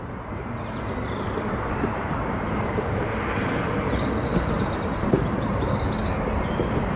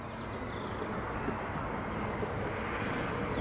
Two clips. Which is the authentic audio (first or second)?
second